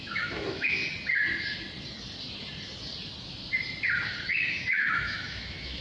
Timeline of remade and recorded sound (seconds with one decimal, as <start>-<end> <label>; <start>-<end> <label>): 0.0-0.8 remade; 0.8-4.3 recorded; 4.3-5.8 remade